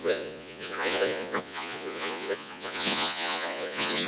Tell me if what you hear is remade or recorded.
remade